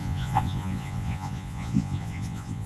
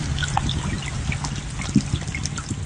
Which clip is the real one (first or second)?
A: second